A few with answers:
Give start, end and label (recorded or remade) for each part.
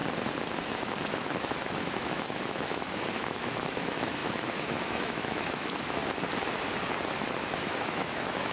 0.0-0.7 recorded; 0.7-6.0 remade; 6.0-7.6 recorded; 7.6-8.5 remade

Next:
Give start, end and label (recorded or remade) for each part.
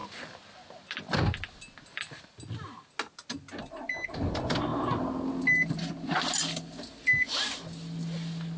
0.0-8.6 recorded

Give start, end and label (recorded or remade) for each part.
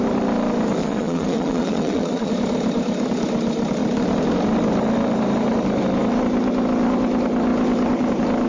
0.0-0.8 recorded; 0.8-2.3 remade; 2.3-8.5 recorded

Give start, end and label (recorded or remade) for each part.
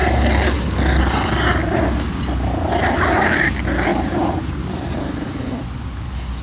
0.0-3.9 recorded; 3.9-5.8 remade; 5.8-6.4 recorded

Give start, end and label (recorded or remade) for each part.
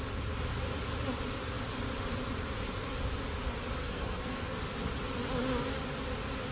0.0-3.8 recorded; 3.8-4.6 remade; 4.6-6.5 recorded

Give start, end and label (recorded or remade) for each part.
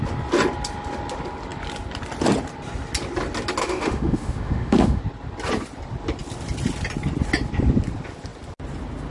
0.0-3.6 recorded; 3.6-5.0 remade; 5.0-9.1 recorded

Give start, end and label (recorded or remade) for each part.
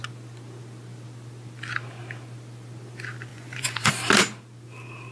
0.0-3.3 recorded; 3.3-3.9 remade; 3.9-5.1 recorded